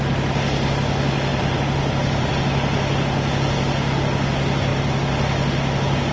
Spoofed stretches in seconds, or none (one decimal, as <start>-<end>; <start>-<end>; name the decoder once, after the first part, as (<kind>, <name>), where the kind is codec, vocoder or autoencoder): 1.3-2.3 (vocoder, BigVGAN v2)